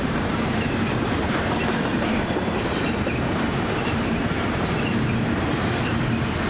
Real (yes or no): no